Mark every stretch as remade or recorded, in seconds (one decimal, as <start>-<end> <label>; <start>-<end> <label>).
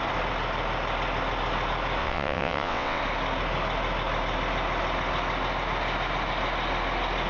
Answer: 0.0-2.0 recorded; 2.0-3.0 remade; 3.0-7.3 recorded